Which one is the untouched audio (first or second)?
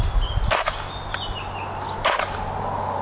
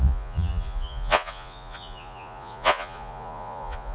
first